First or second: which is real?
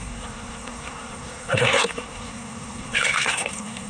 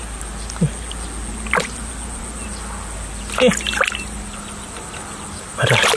second